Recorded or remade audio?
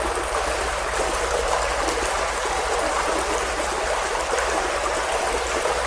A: recorded